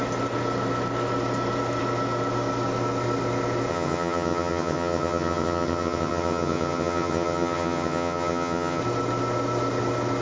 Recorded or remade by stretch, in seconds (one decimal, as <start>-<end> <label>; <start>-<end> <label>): 0.0-3.7 recorded; 3.7-8.8 remade; 8.8-10.2 recorded